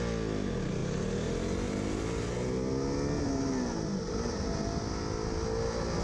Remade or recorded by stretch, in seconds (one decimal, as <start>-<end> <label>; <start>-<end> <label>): 0.0-6.0 recorded